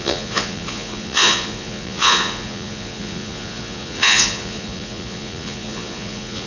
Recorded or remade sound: remade